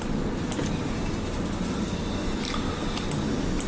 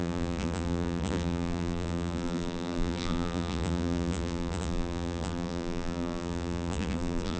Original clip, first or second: first